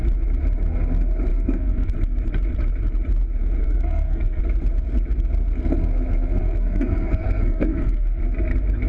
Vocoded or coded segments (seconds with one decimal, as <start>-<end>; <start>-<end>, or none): 1.3-1.9; 3.6-4.4; 6.4-8.2